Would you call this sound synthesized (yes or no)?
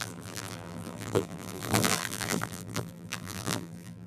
yes